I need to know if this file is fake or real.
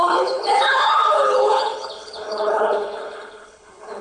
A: fake